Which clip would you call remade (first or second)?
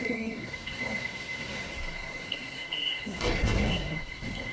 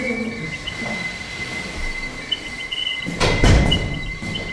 first